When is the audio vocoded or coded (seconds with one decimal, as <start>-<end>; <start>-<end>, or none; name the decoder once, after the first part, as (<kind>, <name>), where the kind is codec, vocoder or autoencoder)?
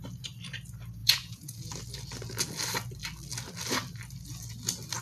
1.0-1.7 (vocoder, Vocos)